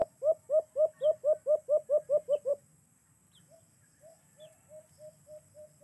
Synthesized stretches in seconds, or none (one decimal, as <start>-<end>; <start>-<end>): none